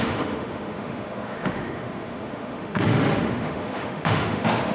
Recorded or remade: remade